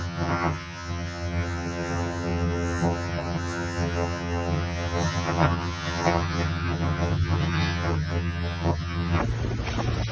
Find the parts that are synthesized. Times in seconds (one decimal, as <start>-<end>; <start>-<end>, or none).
0.0-9.2